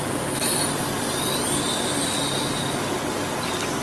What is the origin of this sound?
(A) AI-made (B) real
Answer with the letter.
B